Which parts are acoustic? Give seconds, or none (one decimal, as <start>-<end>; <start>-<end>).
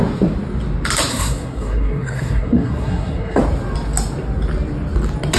0.0-1.1; 3.4-5.4